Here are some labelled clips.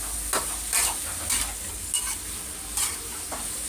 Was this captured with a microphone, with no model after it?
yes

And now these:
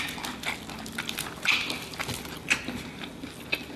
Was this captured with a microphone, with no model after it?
yes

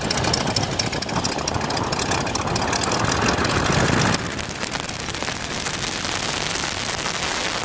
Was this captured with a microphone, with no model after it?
yes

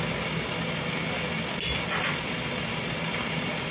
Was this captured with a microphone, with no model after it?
yes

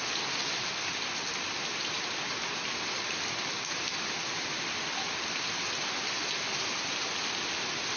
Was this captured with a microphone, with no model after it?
yes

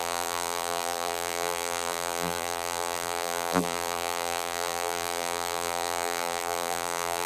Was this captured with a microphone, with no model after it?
no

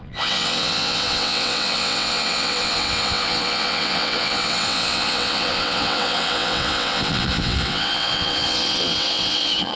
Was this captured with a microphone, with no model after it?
no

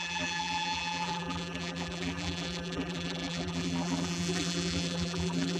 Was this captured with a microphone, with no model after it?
no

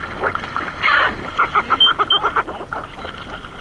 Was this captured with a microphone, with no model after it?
yes